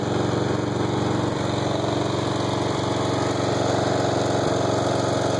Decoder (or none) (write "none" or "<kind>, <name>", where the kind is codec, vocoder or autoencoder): none